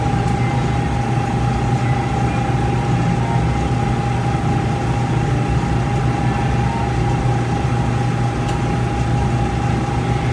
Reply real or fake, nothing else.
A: real